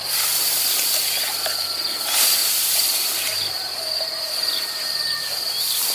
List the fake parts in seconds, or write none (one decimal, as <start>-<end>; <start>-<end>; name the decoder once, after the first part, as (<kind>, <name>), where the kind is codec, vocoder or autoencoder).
2.4-5.9 (vocoder, BigVGAN v2)

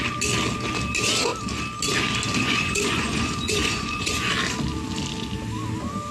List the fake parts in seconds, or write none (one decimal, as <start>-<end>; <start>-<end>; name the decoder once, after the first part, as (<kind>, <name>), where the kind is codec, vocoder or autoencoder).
2.4-4.3 (vocoder, Vocos)

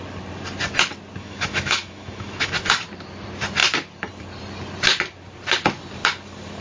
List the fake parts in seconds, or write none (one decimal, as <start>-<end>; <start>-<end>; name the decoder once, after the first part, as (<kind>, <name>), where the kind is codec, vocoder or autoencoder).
1.2-2.5 (autoencoder, DAC-VAE)

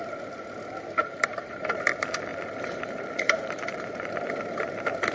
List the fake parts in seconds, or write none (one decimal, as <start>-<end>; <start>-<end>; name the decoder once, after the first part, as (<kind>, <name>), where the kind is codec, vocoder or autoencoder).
1.0-1.8 (vocoder, BigVGAN v2); 2.3-4.3

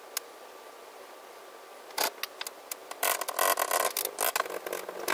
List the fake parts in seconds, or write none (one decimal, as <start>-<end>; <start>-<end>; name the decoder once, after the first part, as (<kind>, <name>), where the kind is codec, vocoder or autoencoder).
none